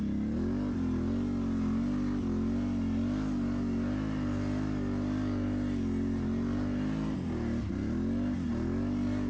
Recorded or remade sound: recorded